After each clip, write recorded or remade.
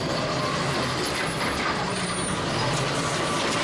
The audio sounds recorded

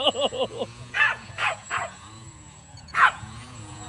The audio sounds remade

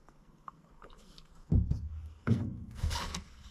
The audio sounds remade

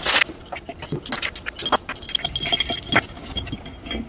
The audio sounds recorded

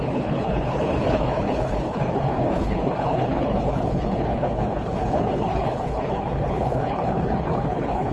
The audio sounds remade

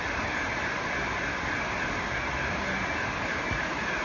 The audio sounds recorded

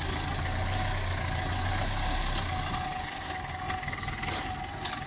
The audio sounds recorded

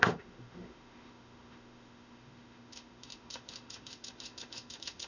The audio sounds remade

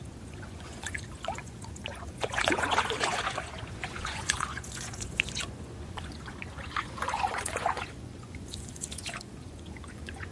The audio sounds remade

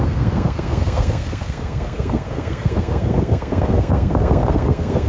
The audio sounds remade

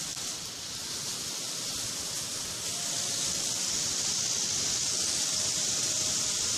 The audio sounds recorded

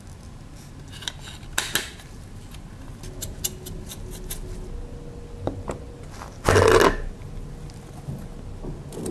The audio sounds recorded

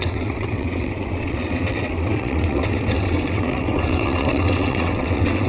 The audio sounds remade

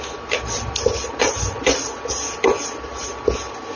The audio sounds recorded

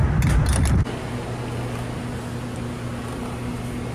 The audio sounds recorded